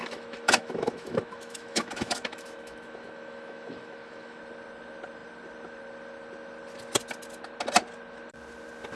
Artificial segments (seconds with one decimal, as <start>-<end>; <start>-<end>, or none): 0.0-4.4